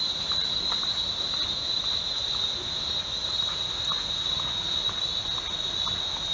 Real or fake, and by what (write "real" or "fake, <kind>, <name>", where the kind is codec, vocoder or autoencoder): real